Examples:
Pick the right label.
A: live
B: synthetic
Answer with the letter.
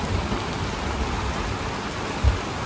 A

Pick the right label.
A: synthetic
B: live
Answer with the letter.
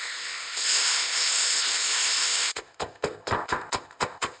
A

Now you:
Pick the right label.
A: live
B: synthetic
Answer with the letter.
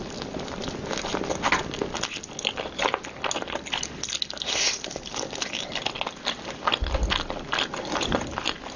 A